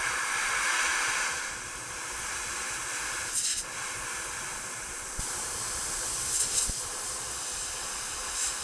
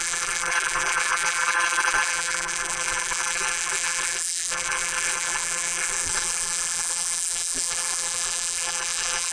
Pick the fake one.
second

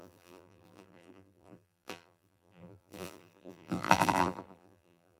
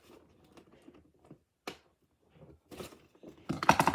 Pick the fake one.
first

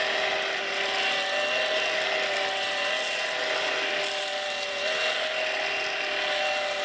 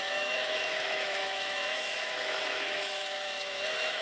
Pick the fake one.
second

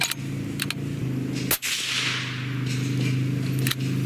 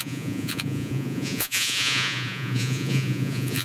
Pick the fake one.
second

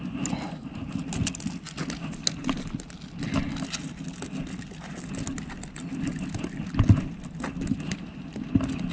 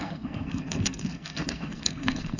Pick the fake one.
second